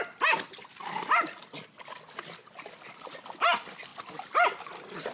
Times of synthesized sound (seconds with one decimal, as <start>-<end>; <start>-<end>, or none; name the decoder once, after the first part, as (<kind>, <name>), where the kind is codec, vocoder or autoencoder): none